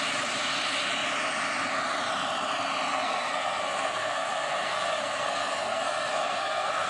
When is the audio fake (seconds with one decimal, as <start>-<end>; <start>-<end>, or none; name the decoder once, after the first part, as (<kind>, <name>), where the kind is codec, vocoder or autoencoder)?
2.9-6.9 (codec, SNAC)